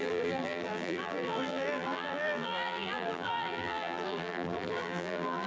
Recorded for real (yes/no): no